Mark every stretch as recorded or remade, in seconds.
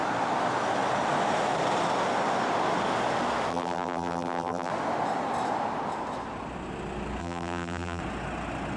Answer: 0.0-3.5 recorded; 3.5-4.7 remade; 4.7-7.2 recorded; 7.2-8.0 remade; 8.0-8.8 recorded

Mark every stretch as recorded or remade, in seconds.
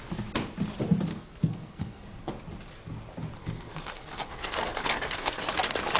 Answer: 0.0-1.1 recorded; 1.1-2.3 remade; 2.3-3.4 recorded; 3.4-5.4 remade; 5.4-6.0 recorded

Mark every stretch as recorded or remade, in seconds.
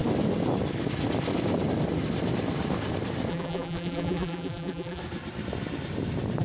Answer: 0.0-3.3 recorded; 3.3-5.0 remade; 5.0-6.4 recorded